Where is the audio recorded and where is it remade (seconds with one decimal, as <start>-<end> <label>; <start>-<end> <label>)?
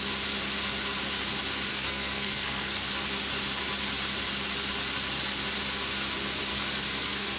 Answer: 0.0-1.7 recorded; 1.7-2.9 remade; 2.9-6.5 recorded; 6.5-7.4 remade